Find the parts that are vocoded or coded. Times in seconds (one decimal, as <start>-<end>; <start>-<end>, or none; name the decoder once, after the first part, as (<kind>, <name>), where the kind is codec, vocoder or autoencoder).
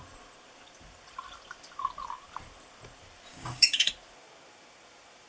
3.3-3.9 (codec, DAC)